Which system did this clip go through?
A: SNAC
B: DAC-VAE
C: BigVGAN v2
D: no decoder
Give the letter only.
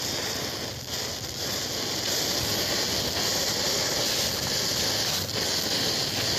D